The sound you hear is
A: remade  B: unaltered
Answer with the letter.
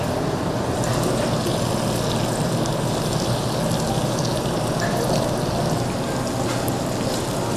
B